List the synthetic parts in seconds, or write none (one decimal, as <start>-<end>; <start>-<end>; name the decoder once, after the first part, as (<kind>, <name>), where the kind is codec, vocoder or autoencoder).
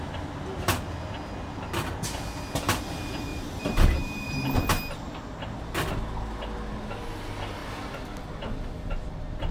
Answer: 3.3-4.6 (vocoder, BigVGAN v2)